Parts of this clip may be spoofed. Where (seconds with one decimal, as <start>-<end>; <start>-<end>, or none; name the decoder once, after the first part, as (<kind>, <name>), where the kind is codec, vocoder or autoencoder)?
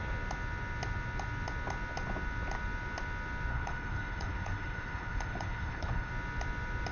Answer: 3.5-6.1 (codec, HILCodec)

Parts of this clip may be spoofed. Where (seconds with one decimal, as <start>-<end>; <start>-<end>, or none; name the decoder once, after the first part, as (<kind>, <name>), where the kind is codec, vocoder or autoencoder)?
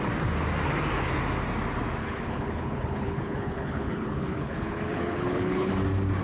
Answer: 2.0-5.7 (codec, HILCodec)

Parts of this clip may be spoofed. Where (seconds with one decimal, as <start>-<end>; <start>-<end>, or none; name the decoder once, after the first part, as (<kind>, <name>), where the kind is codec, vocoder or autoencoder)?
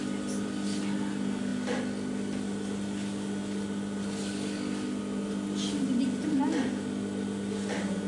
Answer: none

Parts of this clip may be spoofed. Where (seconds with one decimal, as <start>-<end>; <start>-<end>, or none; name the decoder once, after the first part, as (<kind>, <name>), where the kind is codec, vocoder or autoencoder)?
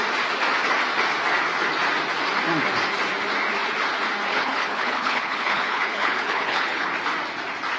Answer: 4.3-6.9 (codec, HILCodec)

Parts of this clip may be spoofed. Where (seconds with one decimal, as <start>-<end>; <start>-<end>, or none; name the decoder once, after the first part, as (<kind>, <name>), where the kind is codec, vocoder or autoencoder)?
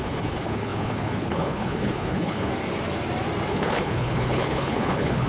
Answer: 0.0-2.5 (codec, HILCodec); 3.5-5.3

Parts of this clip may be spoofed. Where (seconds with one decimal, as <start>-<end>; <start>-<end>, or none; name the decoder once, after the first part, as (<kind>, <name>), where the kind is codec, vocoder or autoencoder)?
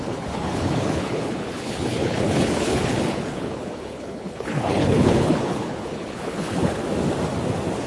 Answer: 0.0-6.8 (codec, HILCodec)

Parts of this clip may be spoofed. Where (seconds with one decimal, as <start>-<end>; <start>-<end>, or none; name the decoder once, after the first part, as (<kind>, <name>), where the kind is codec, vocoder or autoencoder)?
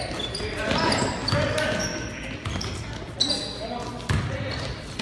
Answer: none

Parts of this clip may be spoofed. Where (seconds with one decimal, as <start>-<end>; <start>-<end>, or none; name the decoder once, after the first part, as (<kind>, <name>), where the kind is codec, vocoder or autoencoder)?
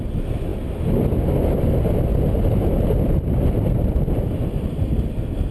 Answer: none